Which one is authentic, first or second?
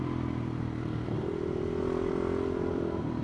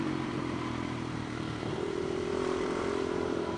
first